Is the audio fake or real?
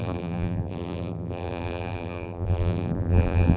fake